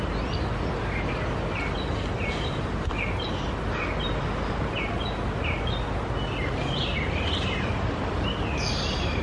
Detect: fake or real real